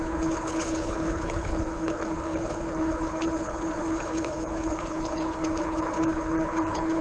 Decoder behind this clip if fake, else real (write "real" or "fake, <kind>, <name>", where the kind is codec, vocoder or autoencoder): fake, codec, HILCodec